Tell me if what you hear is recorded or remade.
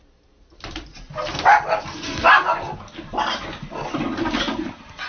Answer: recorded